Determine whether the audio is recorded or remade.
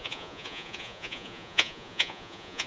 remade